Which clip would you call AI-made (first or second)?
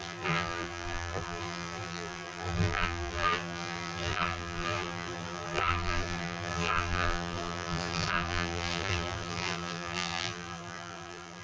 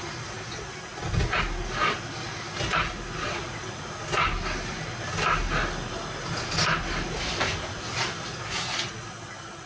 first